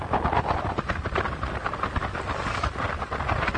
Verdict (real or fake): real